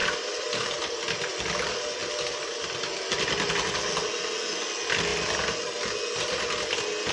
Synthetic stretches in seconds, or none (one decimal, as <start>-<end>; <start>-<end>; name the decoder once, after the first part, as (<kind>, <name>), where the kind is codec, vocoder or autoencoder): 0.0-0.9 (vocoder, BigVGAN v2)